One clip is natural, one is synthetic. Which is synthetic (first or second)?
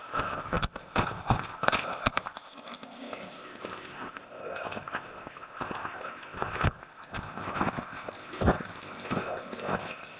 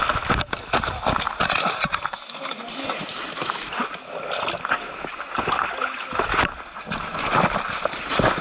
first